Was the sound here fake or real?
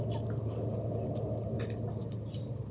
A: real